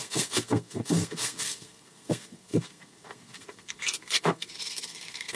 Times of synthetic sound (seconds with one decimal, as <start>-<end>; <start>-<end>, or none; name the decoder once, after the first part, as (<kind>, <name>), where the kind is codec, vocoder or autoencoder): 0.0-5.4 (codec, SNAC)

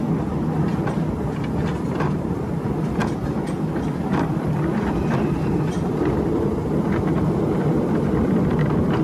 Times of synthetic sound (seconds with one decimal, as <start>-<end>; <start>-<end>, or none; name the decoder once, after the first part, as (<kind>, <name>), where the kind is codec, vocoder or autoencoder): 1.7-2.5 (vocoder, BigVGAN v2)

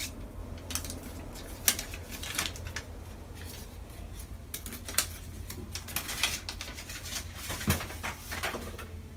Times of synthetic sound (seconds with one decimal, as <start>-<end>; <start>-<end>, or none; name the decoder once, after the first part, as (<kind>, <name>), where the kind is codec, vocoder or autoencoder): 7.1-7.8 (vocoder, BigVGAN v2)

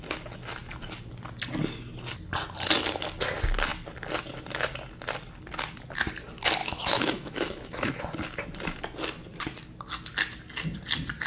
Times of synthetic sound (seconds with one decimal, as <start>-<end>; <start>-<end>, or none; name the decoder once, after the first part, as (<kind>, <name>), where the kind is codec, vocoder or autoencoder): 6.6-7.9 (autoencoder, DAC-VAE)